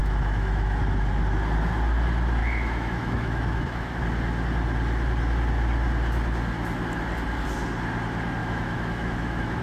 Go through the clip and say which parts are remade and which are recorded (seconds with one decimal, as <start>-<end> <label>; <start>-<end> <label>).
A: 0.0-0.8 remade; 0.8-2.4 recorded; 2.4-4.0 remade; 4.0-8.4 recorded; 8.4-9.6 remade

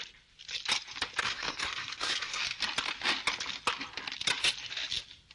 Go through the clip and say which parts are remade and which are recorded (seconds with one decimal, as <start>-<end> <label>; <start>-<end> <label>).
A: 0.0-1.2 recorded; 1.2-2.4 remade; 2.4-5.3 recorded

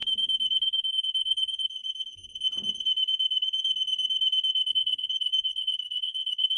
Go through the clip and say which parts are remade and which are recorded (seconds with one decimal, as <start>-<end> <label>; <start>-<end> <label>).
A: 0.0-0.9 recorded; 0.9-1.8 remade; 1.8-4.7 recorded; 4.7-6.6 remade

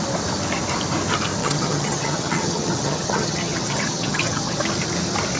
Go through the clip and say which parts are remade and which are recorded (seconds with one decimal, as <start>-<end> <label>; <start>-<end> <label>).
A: 0.0-1.4 recorded; 1.4-4.6 remade; 4.6-5.4 recorded

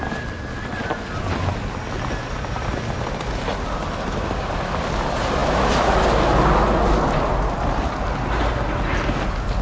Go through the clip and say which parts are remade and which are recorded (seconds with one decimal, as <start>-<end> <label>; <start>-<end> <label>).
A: 0.0-9.6 recorded

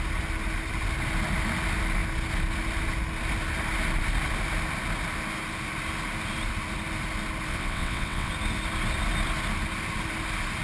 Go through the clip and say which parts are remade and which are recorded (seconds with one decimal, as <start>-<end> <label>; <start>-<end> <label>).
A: 0.0-7.5 recorded; 7.5-8.3 remade; 8.3-10.6 recorded

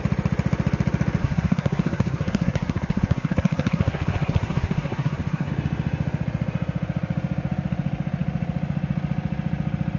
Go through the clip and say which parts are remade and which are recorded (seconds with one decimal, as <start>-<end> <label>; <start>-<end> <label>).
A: 0.0-1.2 recorded; 1.2-5.5 remade; 5.5-10.0 recorded

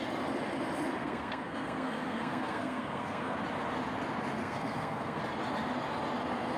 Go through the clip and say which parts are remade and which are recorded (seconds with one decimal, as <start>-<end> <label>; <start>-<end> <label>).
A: 0.0-1.0 recorded; 1.0-3.4 remade; 3.4-4.4 recorded; 4.4-5.2 remade; 5.2-6.6 recorded